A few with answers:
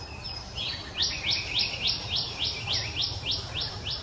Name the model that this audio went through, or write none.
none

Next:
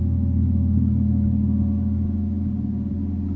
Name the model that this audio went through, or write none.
none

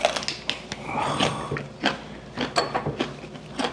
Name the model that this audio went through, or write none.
none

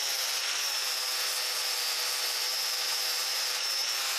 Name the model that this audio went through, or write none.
none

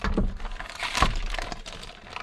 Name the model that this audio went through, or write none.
none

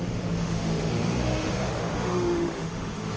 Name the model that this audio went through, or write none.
autoencoder, DAC-VAE